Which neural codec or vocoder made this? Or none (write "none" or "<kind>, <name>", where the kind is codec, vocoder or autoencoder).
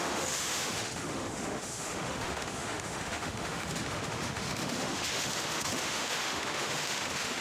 autoencoder, DAC-VAE